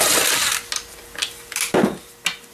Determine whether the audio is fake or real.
real